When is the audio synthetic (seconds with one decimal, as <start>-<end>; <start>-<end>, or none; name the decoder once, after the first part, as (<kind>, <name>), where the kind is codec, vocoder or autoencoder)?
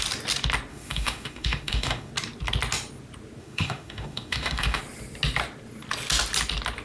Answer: 0.7-2.1 (autoencoder, DAC-VAE); 3.4-4.8